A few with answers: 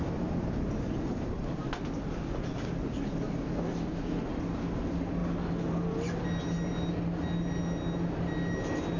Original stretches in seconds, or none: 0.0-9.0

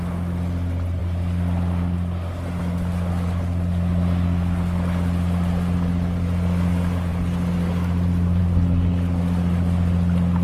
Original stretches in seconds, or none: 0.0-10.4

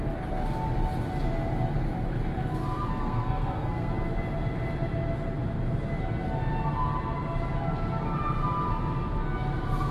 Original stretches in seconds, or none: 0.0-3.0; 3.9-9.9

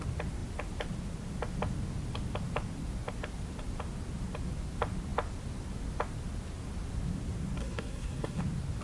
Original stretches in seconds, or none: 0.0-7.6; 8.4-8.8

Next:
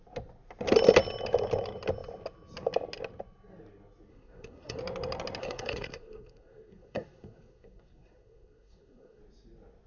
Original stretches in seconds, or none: 0.0-4.1; 4.8-5.4; 9.2-9.9

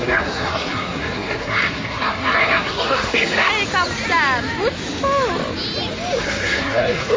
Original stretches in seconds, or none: 3.5-6.2